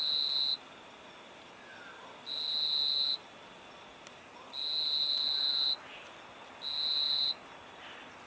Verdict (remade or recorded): recorded